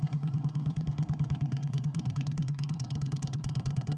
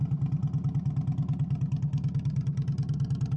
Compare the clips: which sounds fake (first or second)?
first